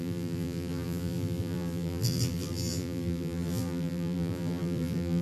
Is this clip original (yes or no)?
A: no